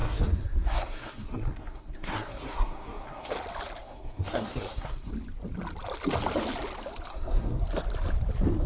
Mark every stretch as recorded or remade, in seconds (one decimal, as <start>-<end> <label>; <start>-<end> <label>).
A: 0.0-3.3 remade; 3.3-3.8 recorded; 3.8-5.1 remade; 5.1-7.1 recorded; 7.1-7.6 remade; 7.6-8.7 recorded

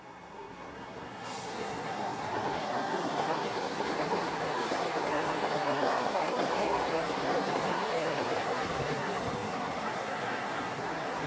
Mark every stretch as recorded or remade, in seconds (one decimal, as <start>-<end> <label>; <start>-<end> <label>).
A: 0.0-11.3 remade

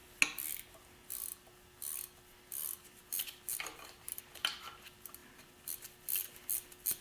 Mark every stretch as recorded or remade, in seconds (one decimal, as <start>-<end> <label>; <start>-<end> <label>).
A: 0.0-7.0 recorded